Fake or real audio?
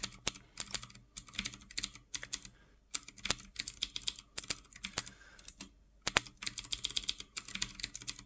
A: real